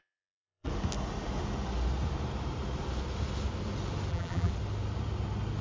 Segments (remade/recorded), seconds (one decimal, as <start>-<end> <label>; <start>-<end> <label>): 0.0-0.7 remade; 0.7-4.1 recorded; 4.1-4.5 remade; 4.5-5.6 recorded